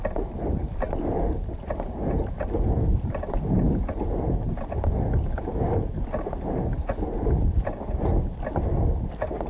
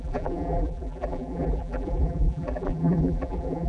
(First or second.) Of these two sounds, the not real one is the second